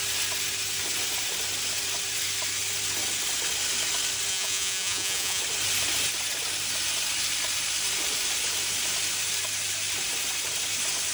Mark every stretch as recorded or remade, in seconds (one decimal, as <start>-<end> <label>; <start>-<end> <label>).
0.0-4.3 recorded; 4.3-5.4 remade; 5.4-11.1 recorded